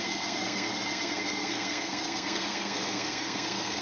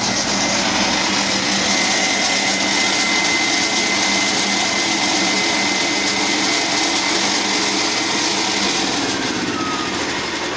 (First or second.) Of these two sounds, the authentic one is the second